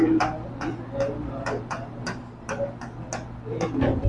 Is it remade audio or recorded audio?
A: recorded